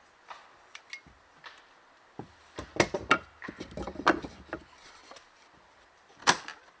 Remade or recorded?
recorded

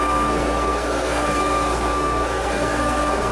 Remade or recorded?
remade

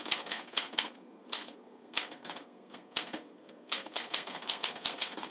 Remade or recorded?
remade